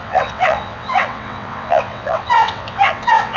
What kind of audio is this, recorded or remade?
remade